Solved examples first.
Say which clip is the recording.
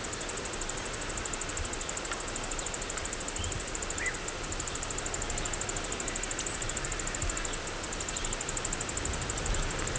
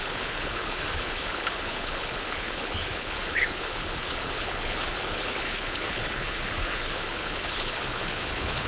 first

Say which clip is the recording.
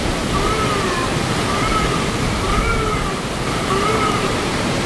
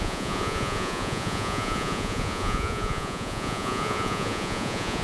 first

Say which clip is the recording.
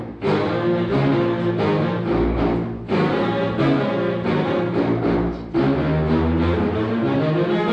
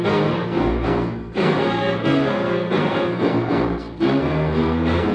first